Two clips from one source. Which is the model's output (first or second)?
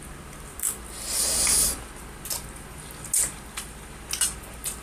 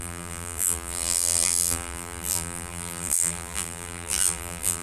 second